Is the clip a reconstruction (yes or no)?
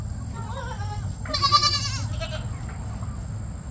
no